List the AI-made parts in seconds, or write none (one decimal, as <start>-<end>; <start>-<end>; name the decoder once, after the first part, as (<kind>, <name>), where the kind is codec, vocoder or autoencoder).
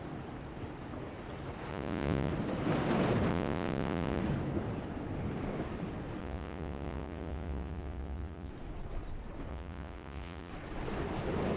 1.7-2.3 (vocoder, Vocos); 3.3-4.2; 6.2-8.5; 9.5-10.5